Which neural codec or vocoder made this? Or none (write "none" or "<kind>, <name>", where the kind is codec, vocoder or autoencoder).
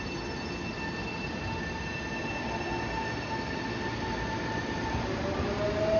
none